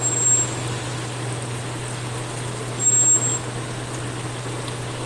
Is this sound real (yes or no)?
yes